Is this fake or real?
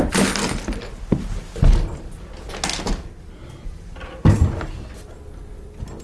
real